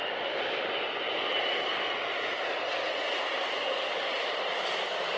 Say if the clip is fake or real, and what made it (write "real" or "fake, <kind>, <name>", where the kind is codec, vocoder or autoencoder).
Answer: real